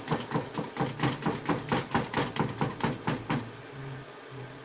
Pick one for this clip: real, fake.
real